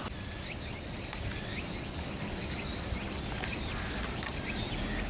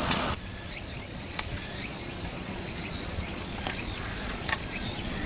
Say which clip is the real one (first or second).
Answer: first